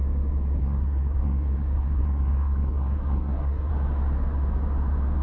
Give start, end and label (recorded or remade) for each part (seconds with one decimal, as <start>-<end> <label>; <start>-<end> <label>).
0.0-0.6 recorded; 0.6-3.7 remade; 3.7-5.2 recorded